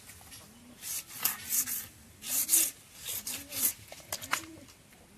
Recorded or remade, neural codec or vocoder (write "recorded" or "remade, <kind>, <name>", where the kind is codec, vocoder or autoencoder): recorded